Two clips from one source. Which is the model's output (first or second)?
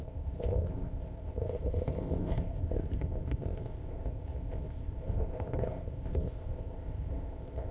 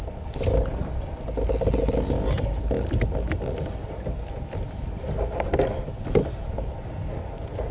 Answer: first